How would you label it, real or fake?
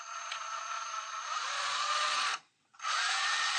fake